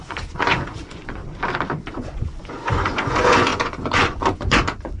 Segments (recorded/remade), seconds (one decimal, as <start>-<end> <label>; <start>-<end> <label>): 0.0-1.2 remade; 1.2-1.9 recorded; 1.9-5.0 remade